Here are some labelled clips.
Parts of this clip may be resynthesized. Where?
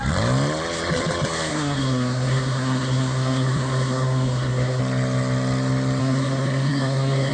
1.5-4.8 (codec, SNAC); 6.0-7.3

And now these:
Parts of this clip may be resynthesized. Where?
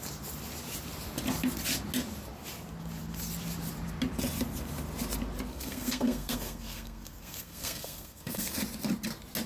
5.5-8.6 (codec, SNAC)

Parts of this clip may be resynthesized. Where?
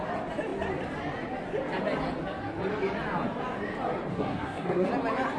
4.1-4.9 (codec, SNAC)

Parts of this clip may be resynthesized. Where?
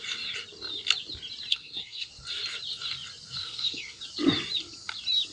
1.5-2.1 (codec, SNAC); 3.4-4.0